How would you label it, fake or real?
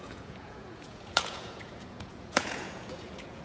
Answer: fake